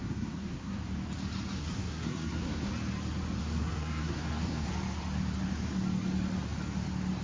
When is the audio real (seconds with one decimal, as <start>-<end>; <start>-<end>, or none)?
0.8-1.6; 2.7-3.4; 4.7-7.2